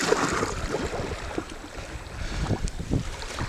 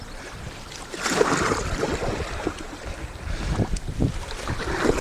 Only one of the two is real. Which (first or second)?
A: second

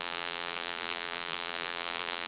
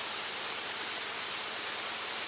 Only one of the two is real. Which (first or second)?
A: second